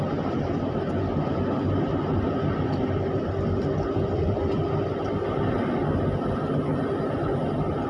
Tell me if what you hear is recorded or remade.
recorded